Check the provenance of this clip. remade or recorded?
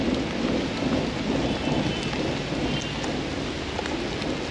recorded